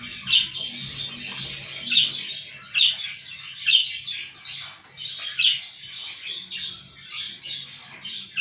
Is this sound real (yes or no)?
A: yes